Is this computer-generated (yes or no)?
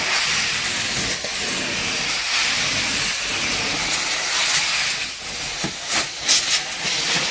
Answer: no